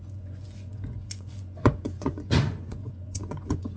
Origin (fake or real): fake